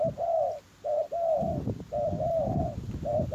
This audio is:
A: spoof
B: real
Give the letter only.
B